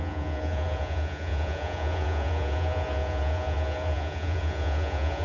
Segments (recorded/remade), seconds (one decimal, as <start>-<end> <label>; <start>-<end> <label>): 0.0-5.2 remade